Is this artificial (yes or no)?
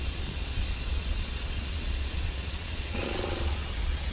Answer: yes